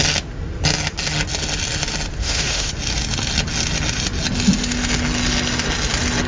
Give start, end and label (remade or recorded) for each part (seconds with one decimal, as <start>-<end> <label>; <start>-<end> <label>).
0.0-2.2 recorded; 2.2-2.7 remade; 2.7-6.3 recorded